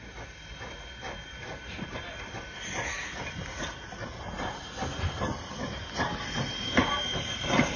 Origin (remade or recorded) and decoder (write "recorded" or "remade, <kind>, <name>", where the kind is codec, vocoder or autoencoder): recorded